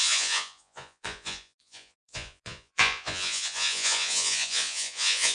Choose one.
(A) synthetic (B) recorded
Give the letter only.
A